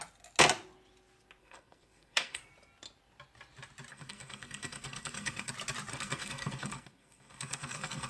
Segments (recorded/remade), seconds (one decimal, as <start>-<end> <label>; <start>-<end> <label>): 0.0-1.4 recorded; 1.4-2.5 remade; 2.5-3.9 recorded; 3.9-5.5 remade; 5.5-5.9 recorded; 5.9-8.1 remade